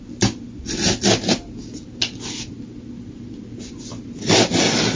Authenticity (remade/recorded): recorded